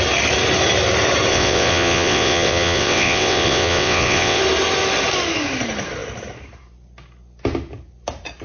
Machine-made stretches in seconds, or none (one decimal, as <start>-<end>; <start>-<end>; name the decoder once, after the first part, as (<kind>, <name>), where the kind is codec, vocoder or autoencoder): 1.3-4.4 (vocoder, WaveNeXt)

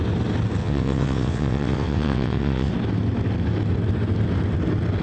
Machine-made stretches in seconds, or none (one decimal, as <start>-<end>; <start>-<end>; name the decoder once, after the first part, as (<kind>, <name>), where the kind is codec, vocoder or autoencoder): 0.6-2.7 (vocoder, WaveNeXt)

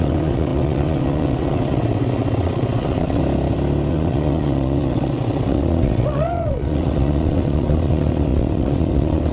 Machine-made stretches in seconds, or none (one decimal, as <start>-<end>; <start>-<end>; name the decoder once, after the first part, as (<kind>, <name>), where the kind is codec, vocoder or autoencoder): 0.0-3.2 (vocoder, WaveNeXt); 3.9-9.3

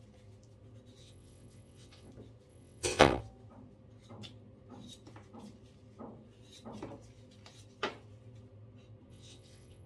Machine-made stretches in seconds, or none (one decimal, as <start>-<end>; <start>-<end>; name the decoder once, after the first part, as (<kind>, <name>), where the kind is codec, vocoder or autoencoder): 1.0-2.1 (vocoder, WaveNeXt); 2.5-3.2; 9.1-9.9

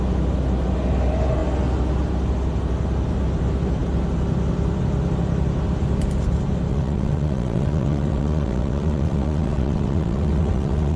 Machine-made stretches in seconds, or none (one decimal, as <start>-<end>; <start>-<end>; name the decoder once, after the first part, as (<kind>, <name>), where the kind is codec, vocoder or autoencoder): 6.7-11.0 (vocoder, WaveNeXt)

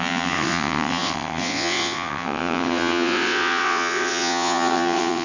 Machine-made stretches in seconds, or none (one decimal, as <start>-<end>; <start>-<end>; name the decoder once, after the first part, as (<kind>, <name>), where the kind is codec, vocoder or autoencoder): 0.0-5.2 (vocoder, WaveNeXt)

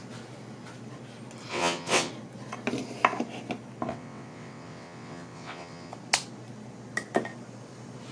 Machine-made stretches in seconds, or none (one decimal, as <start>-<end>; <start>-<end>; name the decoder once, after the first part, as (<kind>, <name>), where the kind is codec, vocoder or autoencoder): 1.5-2.1 (vocoder, WaveNeXt); 3.9-5.9